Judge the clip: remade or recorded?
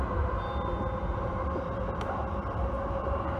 recorded